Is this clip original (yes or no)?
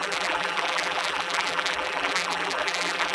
no